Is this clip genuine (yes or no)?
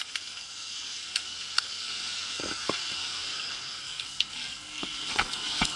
no